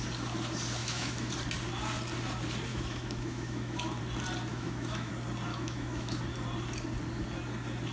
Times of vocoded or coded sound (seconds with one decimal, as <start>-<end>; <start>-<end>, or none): 0.8-1.3; 2.7-4.0; 4.5-5.1; 5.5-6.2

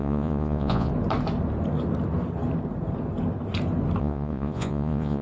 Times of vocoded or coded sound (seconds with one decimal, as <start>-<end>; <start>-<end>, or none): 0.0-0.9; 4.0-5.2

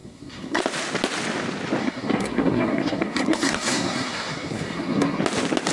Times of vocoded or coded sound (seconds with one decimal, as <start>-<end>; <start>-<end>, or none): 0.0-0.6; 1.8-5.2

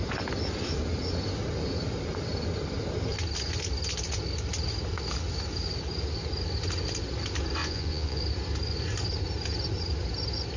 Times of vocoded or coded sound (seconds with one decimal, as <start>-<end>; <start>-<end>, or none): 7.6-8.2

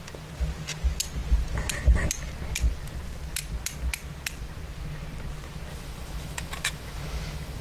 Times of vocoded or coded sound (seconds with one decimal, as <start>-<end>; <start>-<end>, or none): 5.7-7.6

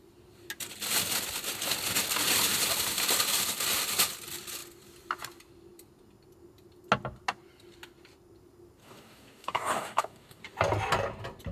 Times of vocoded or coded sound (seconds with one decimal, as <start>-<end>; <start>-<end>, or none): 8.8-10.4

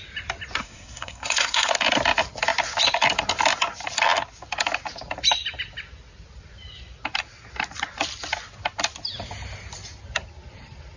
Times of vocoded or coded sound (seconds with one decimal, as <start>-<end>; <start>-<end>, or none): 0.6-1.7

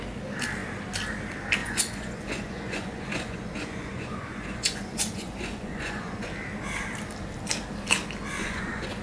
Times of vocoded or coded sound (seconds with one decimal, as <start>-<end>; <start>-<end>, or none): 1.6-6.3; 8.4-9.0